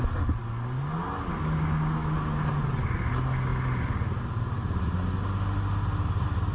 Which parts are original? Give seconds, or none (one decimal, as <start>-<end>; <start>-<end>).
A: 0.0-6.5